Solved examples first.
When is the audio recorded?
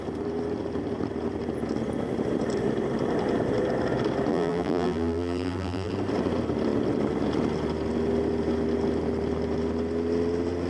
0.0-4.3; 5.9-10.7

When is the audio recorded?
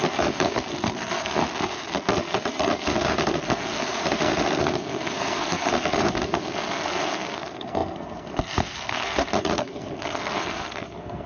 1.4-1.9